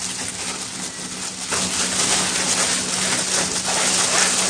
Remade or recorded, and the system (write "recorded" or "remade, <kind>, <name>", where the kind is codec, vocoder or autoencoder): recorded